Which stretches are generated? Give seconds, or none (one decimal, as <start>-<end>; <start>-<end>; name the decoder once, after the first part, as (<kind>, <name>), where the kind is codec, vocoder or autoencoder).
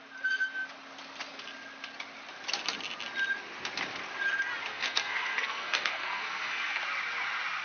4.7-6.8 (codec, SNAC)